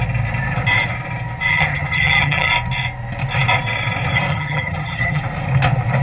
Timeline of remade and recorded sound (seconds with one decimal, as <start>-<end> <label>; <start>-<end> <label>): 0.0-1.5 recorded; 1.5-2.5 remade; 2.5-4.3 recorded; 4.3-5.2 remade; 5.2-6.0 recorded